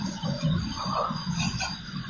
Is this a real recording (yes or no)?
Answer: no